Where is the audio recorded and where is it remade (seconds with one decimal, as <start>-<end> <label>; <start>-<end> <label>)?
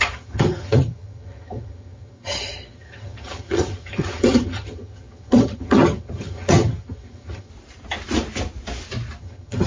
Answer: 0.0-7.5 remade; 7.5-9.2 recorded; 9.2-9.7 remade